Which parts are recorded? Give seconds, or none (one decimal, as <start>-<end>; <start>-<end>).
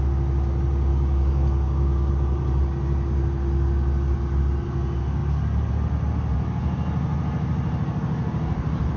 0.0-0.9; 2.1-9.0